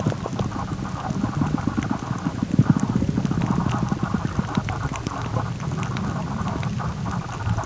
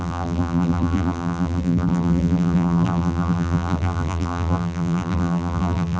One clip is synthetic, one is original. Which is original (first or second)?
first